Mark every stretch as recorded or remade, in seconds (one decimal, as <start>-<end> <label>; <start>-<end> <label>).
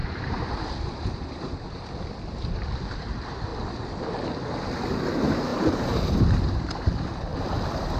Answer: 0.0-1.8 remade; 1.8-5.5 recorded; 5.5-6.6 remade; 6.6-8.0 recorded